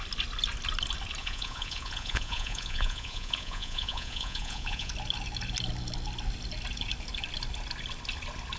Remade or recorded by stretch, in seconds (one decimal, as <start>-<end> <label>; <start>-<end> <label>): 0.0-1.2 recorded; 1.2-4.9 remade; 4.9-8.6 recorded